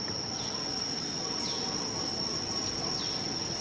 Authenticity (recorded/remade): recorded